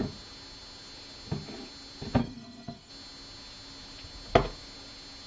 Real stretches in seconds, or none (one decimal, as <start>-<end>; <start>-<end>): 0.0-2.2; 2.9-5.3